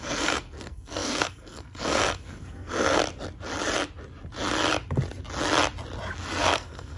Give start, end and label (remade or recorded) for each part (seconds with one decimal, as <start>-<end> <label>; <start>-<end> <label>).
0.0-3.0 remade; 3.0-6.4 recorded; 6.4-7.0 remade